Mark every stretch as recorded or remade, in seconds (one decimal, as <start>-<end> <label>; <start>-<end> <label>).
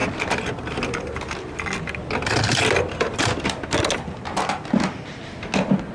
0.0-5.9 recorded